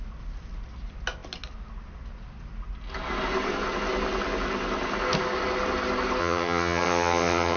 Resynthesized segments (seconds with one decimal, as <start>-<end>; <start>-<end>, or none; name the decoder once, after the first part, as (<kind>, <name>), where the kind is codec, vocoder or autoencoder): 6.2-7.6 (vocoder, HiFi-GAN)